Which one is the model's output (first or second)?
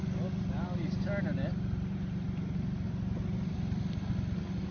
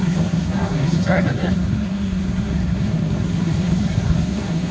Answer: second